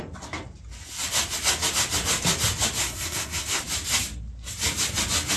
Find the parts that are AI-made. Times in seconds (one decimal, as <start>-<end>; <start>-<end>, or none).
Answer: 2.8-3.6